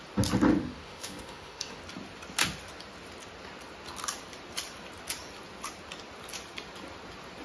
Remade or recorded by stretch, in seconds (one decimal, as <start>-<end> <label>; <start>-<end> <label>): 0.0-0.6 recorded; 0.6-1.8 remade; 1.8-7.4 recorded